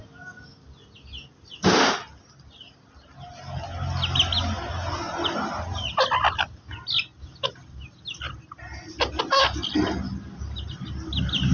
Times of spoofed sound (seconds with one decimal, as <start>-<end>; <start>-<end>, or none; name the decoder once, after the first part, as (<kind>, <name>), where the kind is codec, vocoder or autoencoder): none